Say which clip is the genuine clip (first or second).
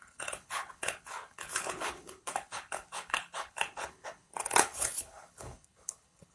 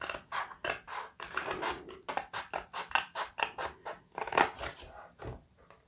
second